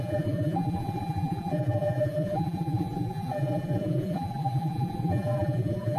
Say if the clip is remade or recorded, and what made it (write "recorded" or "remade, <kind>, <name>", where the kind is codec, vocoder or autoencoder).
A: remade, vocoder, BigVGAN v2